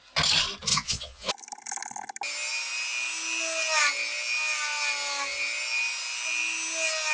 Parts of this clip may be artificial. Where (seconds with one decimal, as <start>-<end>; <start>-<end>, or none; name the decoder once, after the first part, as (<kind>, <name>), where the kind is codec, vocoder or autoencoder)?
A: 0.7-1.3 (vocoder, Vocos)